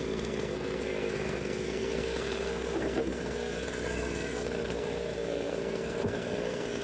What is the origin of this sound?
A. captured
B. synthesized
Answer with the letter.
B